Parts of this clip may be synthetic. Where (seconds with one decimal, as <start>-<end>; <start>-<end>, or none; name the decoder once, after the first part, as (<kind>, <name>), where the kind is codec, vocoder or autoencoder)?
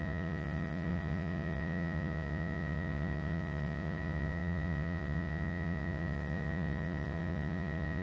0.0-8.0 (vocoder, Vocos)